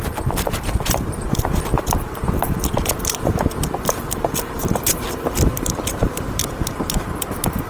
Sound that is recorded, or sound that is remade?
remade